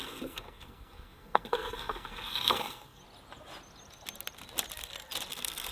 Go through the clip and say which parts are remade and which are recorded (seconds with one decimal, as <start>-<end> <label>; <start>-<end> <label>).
0.0-3.0 remade; 3.0-5.3 recorded; 5.3-5.7 remade